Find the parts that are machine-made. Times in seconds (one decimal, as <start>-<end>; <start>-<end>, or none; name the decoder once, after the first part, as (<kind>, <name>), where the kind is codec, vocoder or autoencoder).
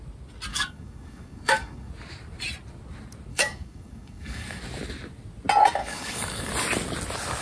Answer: 0.5-1.9 (codec, DAC); 3.3-4.6; 5.8-6.5